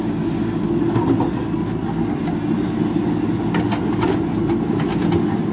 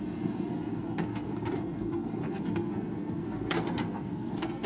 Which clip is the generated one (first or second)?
second